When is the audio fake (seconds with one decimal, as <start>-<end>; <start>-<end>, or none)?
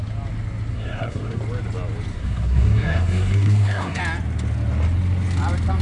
0.7-1.4; 2.1-4.0